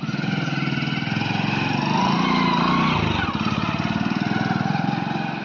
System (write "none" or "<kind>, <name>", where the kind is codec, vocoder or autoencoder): none